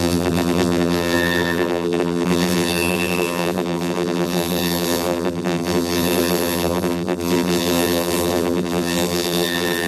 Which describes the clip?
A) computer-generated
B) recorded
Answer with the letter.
A